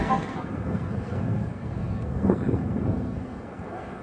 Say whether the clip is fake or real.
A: fake